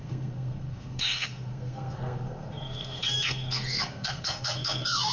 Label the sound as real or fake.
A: fake